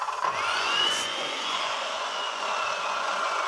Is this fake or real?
fake